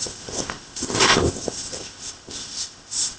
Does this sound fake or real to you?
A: fake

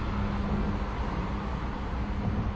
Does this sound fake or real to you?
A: real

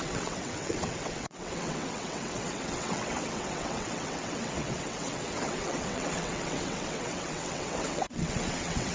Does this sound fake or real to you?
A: fake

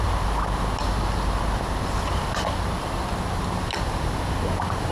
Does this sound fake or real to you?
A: real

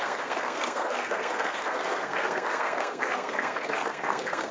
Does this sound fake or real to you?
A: fake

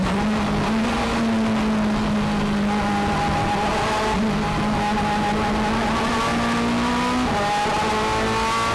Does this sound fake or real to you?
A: real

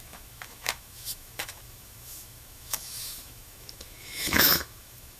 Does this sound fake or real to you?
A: fake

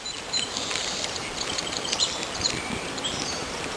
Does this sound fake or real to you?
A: fake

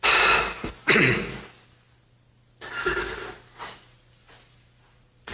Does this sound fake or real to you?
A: real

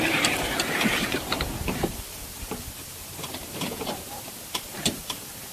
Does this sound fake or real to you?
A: fake